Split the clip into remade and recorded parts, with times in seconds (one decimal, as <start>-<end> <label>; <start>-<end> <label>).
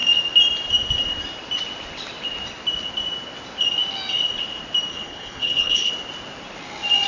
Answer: 0.0-4.9 recorded; 4.9-5.9 remade; 5.9-7.1 recorded